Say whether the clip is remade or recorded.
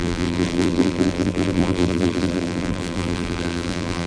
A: remade